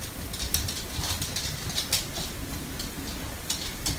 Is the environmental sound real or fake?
fake